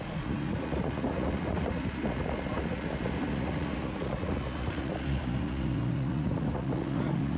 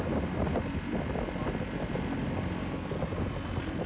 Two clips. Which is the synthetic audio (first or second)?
first